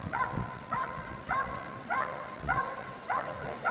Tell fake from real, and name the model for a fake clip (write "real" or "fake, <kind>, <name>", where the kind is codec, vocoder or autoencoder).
fake, vocoder, WaveNeXt